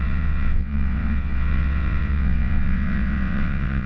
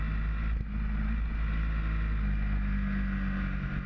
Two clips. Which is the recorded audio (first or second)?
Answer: second